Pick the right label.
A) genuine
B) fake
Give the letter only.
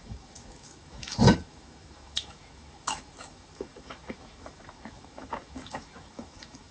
B